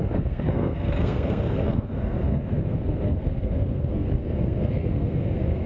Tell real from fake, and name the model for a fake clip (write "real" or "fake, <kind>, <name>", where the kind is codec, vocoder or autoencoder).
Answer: fake, codec, SNAC